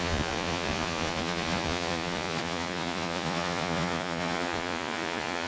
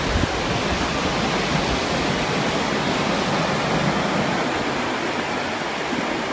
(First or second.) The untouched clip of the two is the second